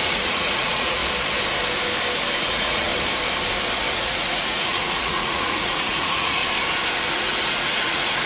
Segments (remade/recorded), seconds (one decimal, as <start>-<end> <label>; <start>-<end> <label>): 0.0-1.0 remade; 1.0-2.4 recorded; 2.4-2.9 remade; 2.9-3.9 recorded; 3.9-6.4 remade; 6.4-7.1 recorded; 7.1-8.3 remade